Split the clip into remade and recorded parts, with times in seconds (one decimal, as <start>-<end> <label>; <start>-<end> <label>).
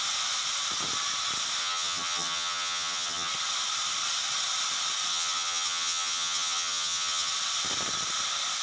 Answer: 0.0-1.6 recorded; 1.6-3.3 remade; 3.3-5.1 recorded; 5.1-7.3 remade; 7.3-8.6 recorded